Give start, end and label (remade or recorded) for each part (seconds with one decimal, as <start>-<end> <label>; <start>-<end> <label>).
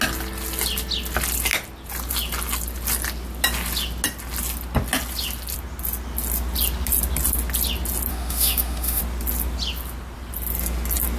0.0-8.1 recorded; 8.1-9.0 remade; 9.0-11.2 recorded